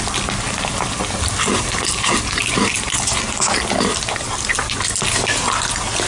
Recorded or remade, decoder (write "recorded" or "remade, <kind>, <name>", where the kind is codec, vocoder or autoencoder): recorded